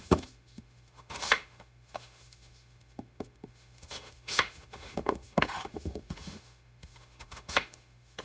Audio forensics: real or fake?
fake